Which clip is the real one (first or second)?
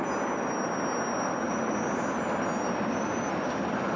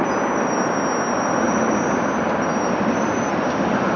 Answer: first